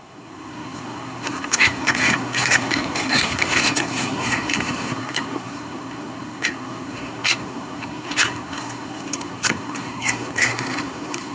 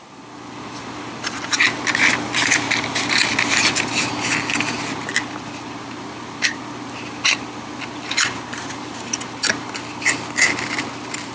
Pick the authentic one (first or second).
second